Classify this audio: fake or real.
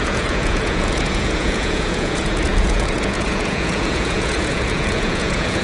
fake